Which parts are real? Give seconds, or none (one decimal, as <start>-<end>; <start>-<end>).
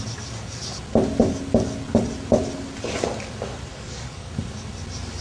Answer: 0.0-3.7; 4.3-5.2